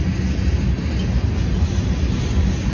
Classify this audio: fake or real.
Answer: real